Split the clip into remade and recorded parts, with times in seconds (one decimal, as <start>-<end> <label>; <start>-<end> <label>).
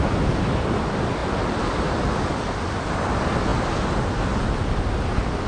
0.0-5.5 recorded